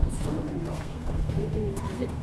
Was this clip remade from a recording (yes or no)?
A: yes